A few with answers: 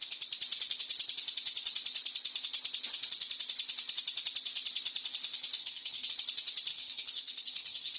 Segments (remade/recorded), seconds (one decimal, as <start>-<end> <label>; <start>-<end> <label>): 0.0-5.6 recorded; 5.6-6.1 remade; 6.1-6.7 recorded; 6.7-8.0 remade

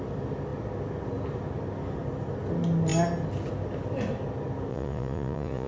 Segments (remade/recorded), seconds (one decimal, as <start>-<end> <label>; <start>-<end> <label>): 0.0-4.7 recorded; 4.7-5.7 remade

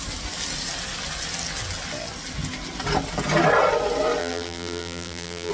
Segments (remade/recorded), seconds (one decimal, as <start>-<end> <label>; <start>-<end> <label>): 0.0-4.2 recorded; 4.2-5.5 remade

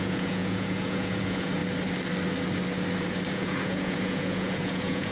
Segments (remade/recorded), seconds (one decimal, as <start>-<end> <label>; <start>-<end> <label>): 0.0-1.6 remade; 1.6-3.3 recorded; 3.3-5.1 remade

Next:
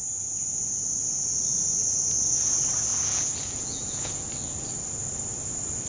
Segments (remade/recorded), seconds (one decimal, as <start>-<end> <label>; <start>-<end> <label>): 0.0-0.8 remade; 0.8-2.9 recorded; 2.9-4.3 remade; 4.3-5.9 recorded